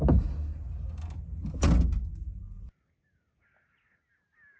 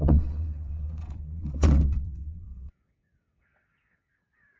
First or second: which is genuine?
first